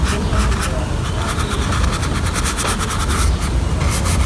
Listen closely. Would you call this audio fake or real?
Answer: real